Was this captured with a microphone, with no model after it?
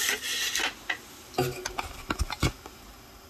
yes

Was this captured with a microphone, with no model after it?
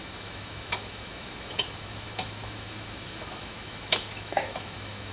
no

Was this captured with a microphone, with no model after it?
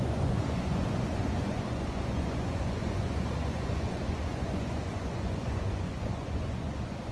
no